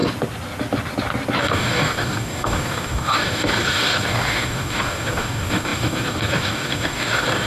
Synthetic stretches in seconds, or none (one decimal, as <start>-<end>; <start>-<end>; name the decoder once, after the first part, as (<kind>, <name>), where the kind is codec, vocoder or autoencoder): 1.4-7.5 (codec, DAC)

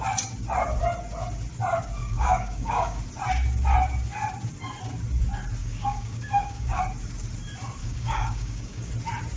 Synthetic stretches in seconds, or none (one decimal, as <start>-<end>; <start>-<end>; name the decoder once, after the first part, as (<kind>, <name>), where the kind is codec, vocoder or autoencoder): 2.0-3.0 (codec, DAC); 5.6-6.8; 7.8-8.9

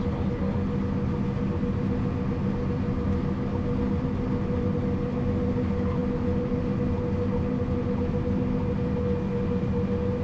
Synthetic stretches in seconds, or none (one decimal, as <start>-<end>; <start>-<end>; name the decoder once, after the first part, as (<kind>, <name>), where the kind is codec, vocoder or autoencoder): none

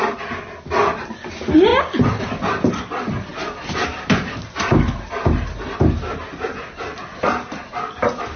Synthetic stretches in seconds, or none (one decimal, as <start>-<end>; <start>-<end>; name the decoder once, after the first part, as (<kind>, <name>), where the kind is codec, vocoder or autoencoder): none

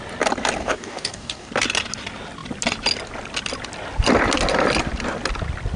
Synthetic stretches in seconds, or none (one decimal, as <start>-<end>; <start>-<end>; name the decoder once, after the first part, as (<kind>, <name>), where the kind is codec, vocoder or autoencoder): 0.6-1.5 (codec, DAC)